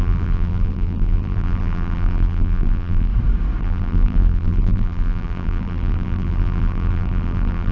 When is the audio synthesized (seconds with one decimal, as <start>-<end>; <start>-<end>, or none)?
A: 0.0-3.1; 3.6-7.7